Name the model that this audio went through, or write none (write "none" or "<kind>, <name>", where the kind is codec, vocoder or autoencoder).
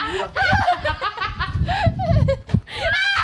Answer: none